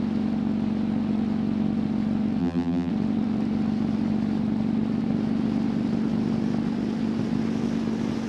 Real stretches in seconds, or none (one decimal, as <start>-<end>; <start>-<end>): 0.0-2.4; 2.9-8.3